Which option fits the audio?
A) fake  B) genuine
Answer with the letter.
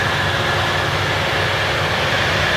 B